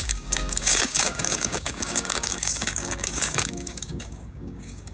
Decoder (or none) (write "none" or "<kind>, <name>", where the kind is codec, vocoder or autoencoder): codec, DAC